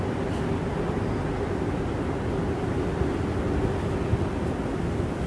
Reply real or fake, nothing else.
real